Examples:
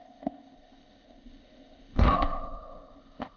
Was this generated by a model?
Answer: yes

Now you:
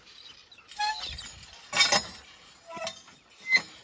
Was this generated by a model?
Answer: no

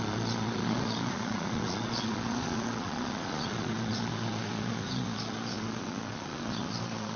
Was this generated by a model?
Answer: yes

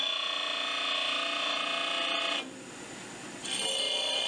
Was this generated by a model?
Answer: no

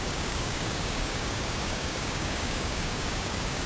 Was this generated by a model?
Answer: yes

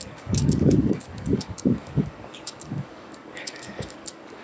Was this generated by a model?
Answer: yes